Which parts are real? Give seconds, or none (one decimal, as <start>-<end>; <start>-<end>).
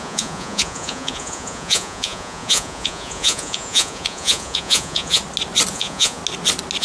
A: 5.2-5.7; 6.2-6.8